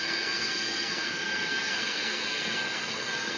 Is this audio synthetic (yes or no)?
yes